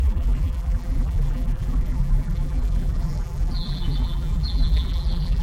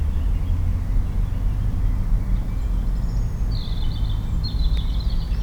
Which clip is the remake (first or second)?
first